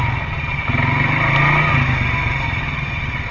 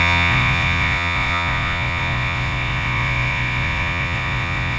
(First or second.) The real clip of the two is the first